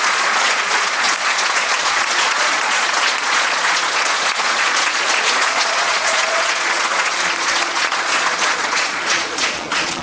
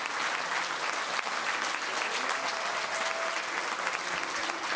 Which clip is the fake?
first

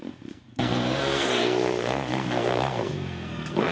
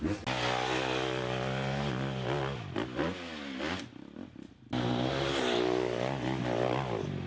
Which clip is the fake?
first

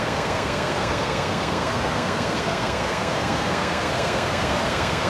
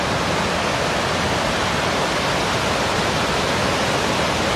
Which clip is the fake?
first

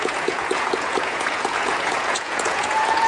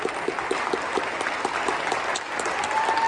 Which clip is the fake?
first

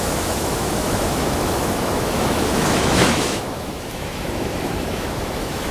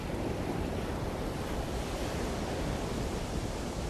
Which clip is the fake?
first